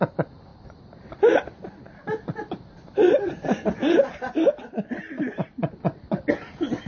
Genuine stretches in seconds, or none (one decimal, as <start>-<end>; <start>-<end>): 0.0-0.5; 4.6-6.9

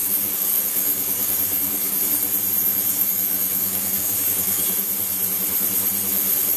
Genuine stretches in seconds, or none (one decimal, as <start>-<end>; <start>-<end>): 2.0-2.6; 4.6-6.6

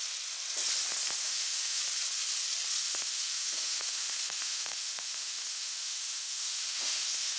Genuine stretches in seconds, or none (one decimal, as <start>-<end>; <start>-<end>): 0.0-1.2; 1.8-2.8